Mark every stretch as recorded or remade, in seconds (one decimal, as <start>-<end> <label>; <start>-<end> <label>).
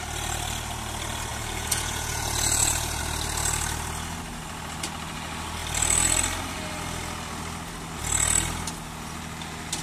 0.0-1.3 recorded; 1.3-3.0 remade; 3.0-9.8 recorded